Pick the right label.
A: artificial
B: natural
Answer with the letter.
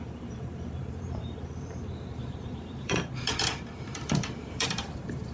A